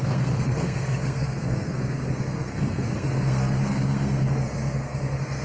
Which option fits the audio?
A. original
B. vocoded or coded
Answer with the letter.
B